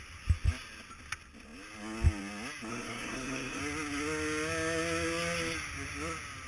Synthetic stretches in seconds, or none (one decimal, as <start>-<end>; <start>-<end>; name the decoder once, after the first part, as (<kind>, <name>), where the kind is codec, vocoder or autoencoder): 2.7-3.6 (codec, SNAC)